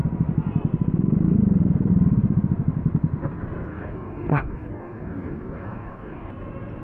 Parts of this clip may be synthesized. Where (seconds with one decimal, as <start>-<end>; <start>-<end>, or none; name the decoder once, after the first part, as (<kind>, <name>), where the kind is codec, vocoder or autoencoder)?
3.7-6.3 (codec, DAC)